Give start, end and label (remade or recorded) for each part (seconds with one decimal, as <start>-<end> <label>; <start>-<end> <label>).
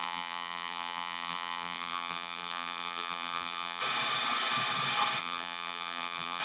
0.0-3.8 remade; 3.8-5.2 recorded; 5.2-6.4 remade